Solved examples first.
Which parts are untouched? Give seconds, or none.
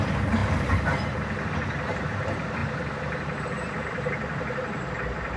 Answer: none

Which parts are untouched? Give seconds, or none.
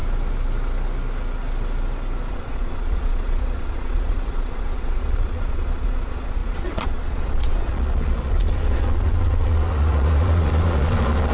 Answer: 0.0-2.3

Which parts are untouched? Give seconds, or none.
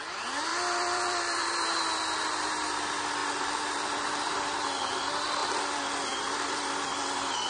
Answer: 0.0-0.5; 1.9-3.2; 4.0-7.5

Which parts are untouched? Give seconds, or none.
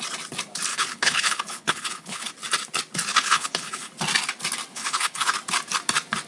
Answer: 0.0-0.7; 2.3-3.1; 3.9-4.7; 5.3-6.3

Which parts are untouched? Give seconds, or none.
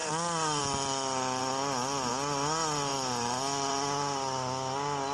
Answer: 0.0-5.1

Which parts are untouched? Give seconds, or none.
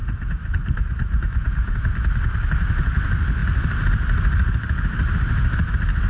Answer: 0.0-6.1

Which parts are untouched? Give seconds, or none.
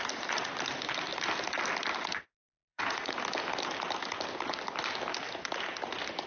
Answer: 0.0-2.5; 3.2-6.3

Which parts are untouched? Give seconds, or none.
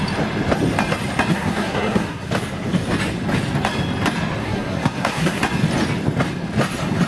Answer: 0.0-1.3; 2.3-4.4; 5.4-7.1